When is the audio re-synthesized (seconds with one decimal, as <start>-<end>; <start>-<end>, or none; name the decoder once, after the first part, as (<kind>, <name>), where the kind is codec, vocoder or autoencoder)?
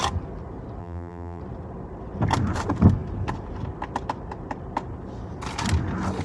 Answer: 0.8-1.4 (vocoder, BigVGAN v2)